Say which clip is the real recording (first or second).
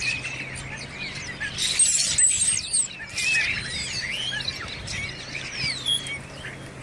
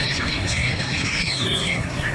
first